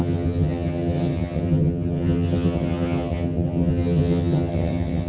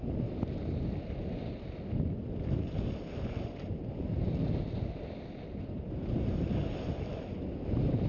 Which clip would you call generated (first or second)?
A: first